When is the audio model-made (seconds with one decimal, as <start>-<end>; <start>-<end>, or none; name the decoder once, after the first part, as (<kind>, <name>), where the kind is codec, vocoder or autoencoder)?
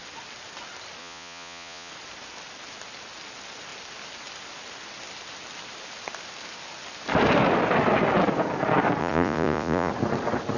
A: 1.0-1.9 (vocoder, Vocos); 9.0-9.9